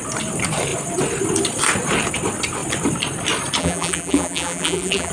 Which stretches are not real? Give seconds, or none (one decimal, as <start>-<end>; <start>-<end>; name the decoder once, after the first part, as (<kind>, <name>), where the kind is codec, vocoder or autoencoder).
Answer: 3.6-5.1 (vocoder, BigVGAN v2)